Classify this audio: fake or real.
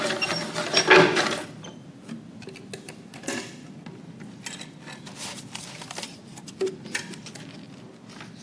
real